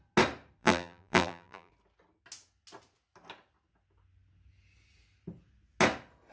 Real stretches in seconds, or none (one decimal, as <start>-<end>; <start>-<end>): 0.0-0.6; 1.7-6.3